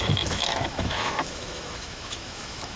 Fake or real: fake